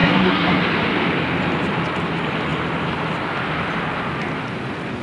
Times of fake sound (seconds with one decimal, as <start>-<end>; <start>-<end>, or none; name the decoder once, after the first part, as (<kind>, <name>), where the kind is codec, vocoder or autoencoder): 0.0-0.6 (codec, SNAC)